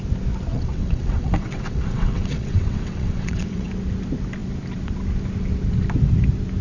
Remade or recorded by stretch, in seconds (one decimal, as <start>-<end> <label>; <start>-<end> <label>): 0.0-0.5 recorded; 0.5-3.7 remade; 3.7-6.6 recorded